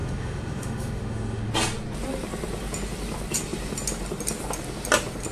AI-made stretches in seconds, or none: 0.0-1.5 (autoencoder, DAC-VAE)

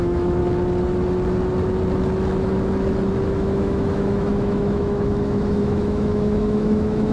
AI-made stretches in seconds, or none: 0.0-0.4 (autoencoder, DAC-VAE); 3.2-7.1